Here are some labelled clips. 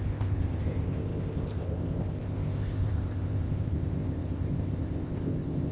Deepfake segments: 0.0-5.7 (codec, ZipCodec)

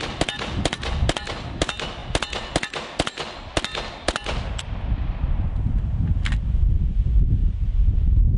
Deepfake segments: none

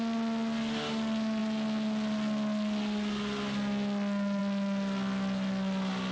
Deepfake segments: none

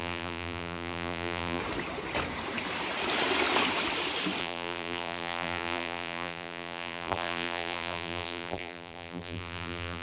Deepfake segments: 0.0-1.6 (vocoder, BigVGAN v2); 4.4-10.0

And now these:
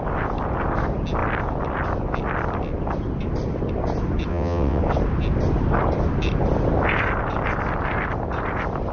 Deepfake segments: 4.3-4.8 (vocoder, WaveNeXt)

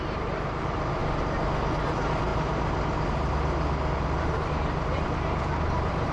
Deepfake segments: 0.0-1.0 (vocoder, BigVGAN v2); 1.9-2.3; 3.9-6.1

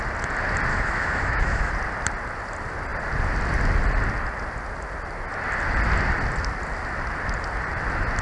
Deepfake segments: 0.7-1.7 (autoencoder, DAC-VAE)